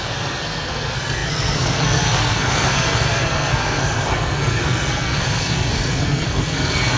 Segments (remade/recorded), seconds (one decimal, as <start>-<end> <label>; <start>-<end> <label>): 0.0-7.0 remade